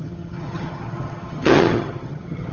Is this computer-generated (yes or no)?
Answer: yes